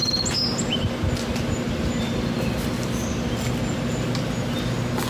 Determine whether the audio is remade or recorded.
recorded